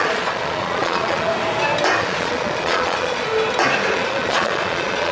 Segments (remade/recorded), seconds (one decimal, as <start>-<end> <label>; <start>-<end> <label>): 0.0-1.3 remade; 1.3-2.0 recorded; 2.0-3.3 remade; 3.3-3.9 recorded; 3.9-5.1 remade